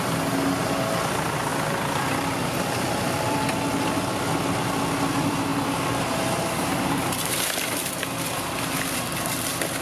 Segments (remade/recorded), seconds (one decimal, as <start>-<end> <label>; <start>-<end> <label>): 0.0-1.5 recorded; 1.5-4.0 remade; 4.0-5.5 recorded; 5.5-8.8 remade; 8.8-9.8 recorded

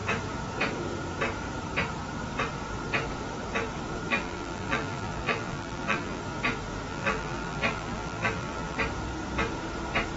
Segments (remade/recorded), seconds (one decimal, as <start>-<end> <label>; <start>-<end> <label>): 0.0-4.1 recorded; 4.1-6.2 remade; 6.2-6.9 recorded; 6.9-8.8 remade; 8.8-10.2 recorded

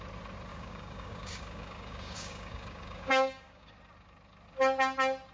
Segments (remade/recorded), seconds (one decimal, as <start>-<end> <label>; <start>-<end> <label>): 0.0-0.5 recorded; 0.5-3.7 remade; 3.7-5.3 recorded

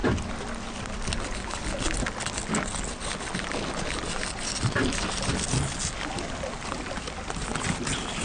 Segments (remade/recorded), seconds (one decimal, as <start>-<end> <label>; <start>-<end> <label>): 0.0-8.2 recorded

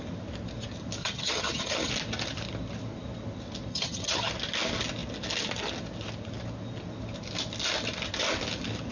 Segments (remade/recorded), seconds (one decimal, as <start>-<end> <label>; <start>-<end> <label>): 0.0-1.0 recorded; 1.0-1.9 remade; 1.9-3.7 recorded; 3.7-4.3 remade; 4.3-8.9 recorded

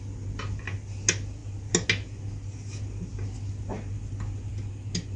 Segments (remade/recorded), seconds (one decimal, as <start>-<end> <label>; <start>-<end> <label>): 0.0-5.2 recorded

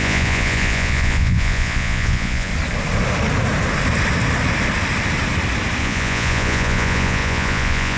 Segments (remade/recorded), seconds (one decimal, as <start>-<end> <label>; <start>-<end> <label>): 0.0-2.5 remade; 2.5-5.8 recorded; 5.8-8.0 remade